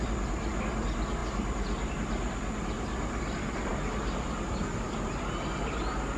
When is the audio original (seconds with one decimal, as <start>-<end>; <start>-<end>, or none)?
0.0-6.2